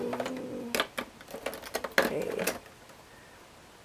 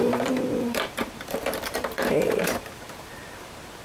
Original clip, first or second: first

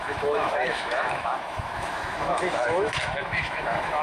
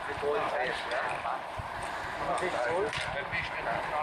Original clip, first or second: second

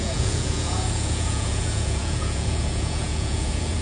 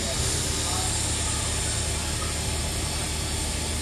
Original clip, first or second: second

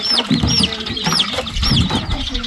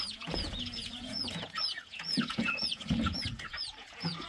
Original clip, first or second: first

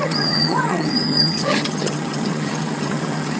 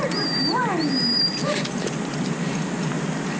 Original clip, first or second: second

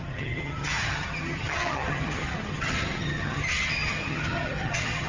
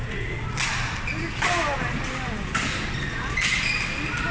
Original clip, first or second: second